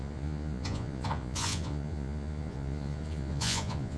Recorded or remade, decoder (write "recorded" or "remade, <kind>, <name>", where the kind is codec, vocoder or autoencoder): remade, vocoder, Vocos